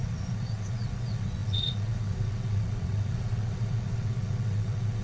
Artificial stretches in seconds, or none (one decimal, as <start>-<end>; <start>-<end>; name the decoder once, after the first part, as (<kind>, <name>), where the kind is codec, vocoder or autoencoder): 0.0-5.0 (vocoder, WaveNeXt)